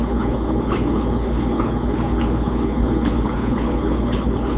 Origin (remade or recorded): remade